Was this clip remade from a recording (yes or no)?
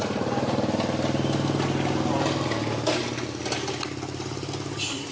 no